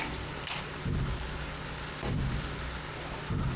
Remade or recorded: recorded